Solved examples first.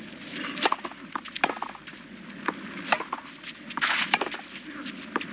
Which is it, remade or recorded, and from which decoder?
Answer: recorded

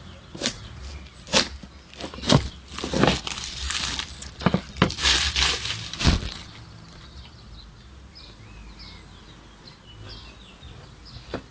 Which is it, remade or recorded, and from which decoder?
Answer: recorded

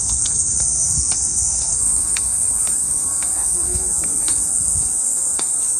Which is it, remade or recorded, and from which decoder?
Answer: remade, codec, SNAC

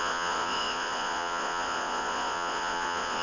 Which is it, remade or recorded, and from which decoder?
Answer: remade, vocoder, Vocos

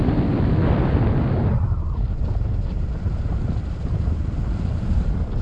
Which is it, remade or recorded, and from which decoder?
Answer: recorded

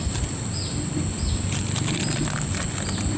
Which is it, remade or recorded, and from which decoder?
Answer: recorded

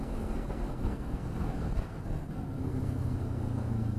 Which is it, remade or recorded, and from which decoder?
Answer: remade, codec, SNAC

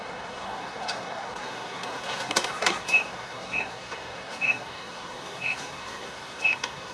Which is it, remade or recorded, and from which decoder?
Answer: remade, codec, SNAC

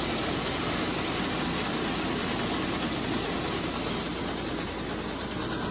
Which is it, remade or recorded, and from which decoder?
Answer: recorded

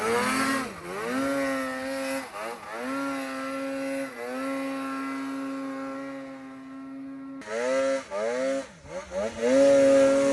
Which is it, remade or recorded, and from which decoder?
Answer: recorded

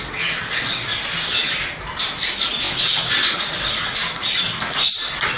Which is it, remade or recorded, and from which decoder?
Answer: recorded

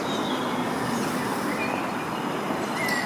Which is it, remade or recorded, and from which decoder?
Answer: recorded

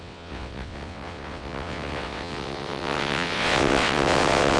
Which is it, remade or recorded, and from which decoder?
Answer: remade, vocoder, WaveNeXt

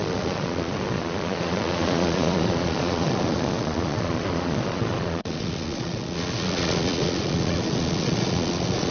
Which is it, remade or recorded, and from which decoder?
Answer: remade, vocoder, Vocos